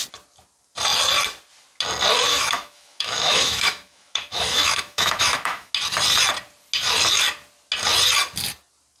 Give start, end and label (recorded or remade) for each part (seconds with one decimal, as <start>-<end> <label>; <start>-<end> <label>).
0.0-2.3 recorded; 2.3-5.7 remade; 5.7-9.0 recorded